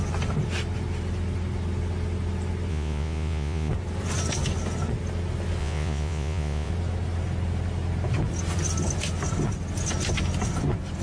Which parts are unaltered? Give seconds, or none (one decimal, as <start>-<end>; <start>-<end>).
0.0-2.7; 3.7-5.6; 6.7-11.0

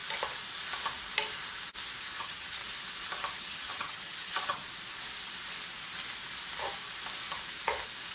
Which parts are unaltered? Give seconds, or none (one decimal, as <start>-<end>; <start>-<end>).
0.0-2.0; 2.6-3.4; 4.6-8.1